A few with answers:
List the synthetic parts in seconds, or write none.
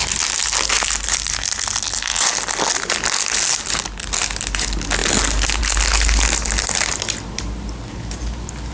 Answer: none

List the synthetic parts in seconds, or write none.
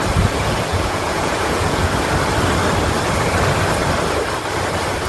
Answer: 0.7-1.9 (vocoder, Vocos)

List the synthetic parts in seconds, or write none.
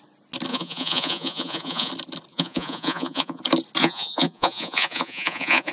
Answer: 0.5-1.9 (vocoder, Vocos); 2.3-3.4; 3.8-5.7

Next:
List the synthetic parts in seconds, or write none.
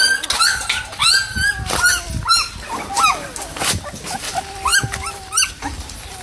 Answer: none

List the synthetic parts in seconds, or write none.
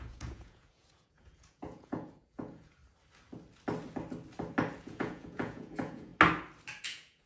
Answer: 0.0-2.8 (vocoder, Vocos); 4.8-6.1; 6.8-7.3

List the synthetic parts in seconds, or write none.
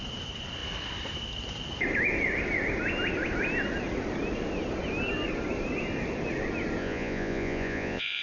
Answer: 6.8-8.2 (vocoder, Vocos)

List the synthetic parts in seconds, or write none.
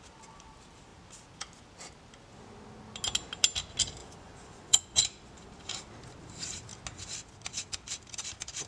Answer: 4.0-5.0 (vocoder, Vocos)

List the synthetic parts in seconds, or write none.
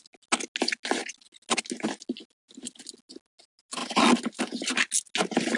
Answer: none